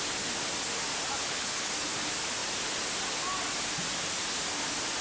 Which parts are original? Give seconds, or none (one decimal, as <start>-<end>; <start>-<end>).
0.0-1.2; 1.7-5.0